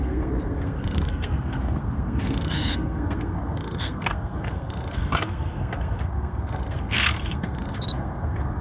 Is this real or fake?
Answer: fake